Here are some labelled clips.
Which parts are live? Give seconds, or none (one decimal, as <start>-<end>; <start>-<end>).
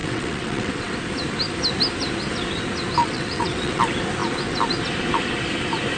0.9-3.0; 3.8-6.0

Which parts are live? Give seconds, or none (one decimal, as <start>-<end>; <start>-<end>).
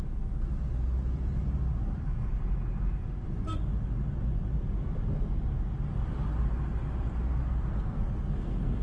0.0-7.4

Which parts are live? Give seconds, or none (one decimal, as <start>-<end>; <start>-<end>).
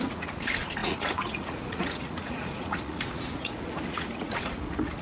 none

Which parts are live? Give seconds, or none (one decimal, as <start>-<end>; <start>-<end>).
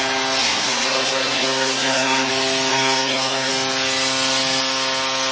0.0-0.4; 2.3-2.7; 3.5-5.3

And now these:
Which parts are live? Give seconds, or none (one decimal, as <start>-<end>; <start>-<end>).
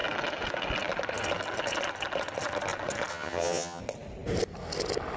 0.0-3.1; 3.8-5.2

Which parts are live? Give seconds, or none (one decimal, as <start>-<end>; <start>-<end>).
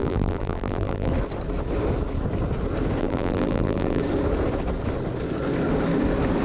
1.1-3.0; 4.0-6.4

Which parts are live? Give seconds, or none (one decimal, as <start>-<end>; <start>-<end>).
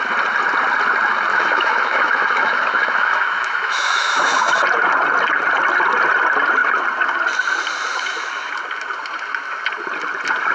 0.0-1.3; 4.2-7.9; 8.5-10.5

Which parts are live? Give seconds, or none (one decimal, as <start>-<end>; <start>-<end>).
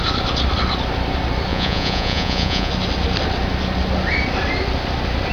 0.0-1.5; 2.7-5.3